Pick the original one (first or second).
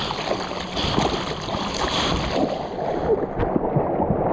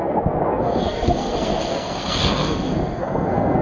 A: first